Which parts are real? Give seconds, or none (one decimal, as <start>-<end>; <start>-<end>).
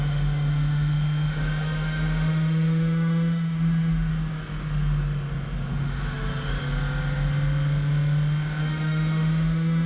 4.1-5.7; 6.6-8.6